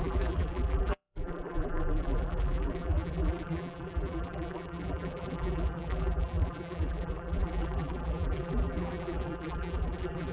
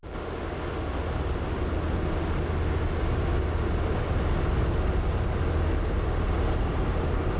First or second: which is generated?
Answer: first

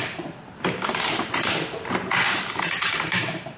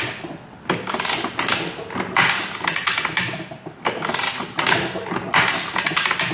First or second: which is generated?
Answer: first